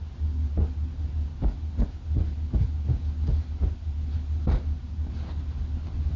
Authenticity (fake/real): real